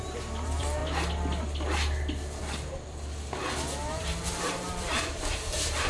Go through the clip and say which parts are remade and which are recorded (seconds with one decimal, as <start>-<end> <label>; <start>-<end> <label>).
0.0-0.8 remade; 0.8-3.9 recorded; 3.9-5.9 remade